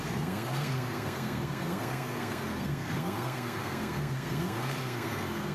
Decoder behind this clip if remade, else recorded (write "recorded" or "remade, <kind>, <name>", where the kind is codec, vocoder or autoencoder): remade, codec, SNAC